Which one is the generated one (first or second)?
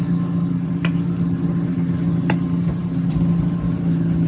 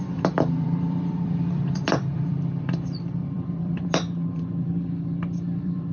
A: second